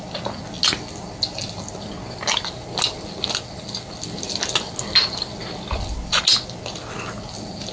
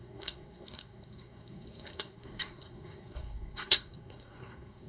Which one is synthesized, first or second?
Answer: second